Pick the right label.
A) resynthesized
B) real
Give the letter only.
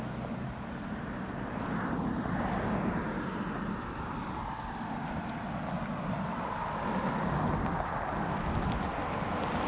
B